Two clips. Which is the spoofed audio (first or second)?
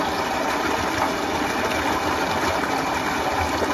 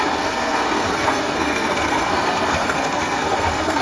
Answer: second